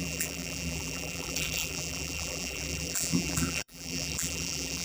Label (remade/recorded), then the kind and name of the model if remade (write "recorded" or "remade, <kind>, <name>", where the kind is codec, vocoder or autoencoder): remade, vocoder, BigVGAN v2